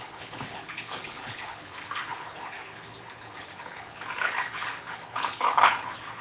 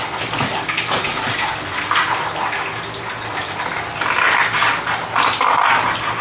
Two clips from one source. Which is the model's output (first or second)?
first